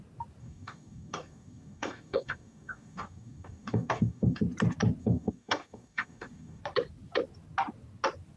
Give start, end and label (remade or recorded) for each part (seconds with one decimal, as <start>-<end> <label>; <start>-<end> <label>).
0.0-0.4 recorded; 0.4-4.4 remade; 4.4-5.0 recorded; 5.0-6.6 remade; 6.6-8.4 recorded